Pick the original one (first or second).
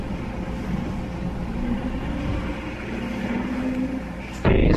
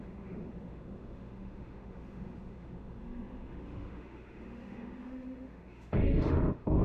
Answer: first